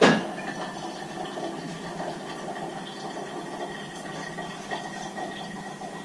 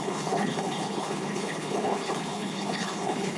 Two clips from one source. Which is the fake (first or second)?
second